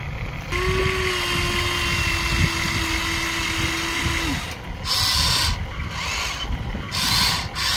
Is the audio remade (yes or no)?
no